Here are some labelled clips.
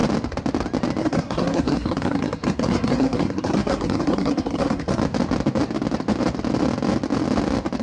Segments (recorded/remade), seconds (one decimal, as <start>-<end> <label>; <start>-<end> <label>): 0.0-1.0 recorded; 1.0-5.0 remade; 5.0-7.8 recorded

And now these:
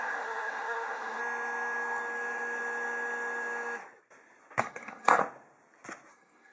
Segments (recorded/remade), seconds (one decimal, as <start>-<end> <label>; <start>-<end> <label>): 0.0-1.2 remade; 1.2-4.6 recorded; 4.6-5.2 remade; 5.2-6.1 recorded; 6.1-6.5 remade

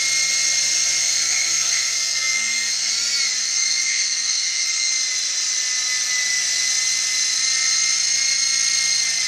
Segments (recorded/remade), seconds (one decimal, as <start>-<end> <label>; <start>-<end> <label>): 0.0-1.0 recorded; 1.0-2.9 remade; 2.9-3.4 recorded; 3.4-4.9 remade; 4.9-9.3 recorded

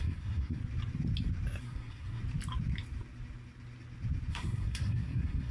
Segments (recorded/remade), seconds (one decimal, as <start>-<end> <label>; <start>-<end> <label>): 0.0-0.6 remade; 0.6-1.6 recorded; 1.6-2.2 remade; 2.2-4.3 recorded; 4.3-5.5 remade